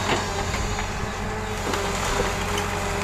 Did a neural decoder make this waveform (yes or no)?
no